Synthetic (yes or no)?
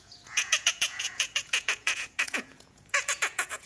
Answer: yes